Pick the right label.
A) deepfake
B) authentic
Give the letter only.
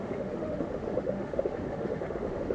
A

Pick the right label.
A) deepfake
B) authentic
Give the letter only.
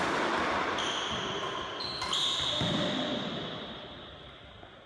B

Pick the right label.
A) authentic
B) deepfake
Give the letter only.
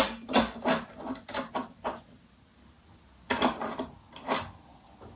A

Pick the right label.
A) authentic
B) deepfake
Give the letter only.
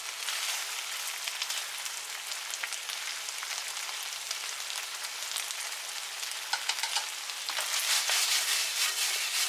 A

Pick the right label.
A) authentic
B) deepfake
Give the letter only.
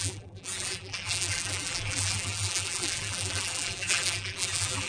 B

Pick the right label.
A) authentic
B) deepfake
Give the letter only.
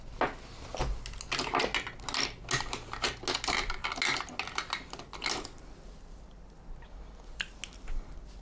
A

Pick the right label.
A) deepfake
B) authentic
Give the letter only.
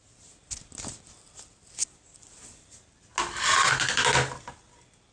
B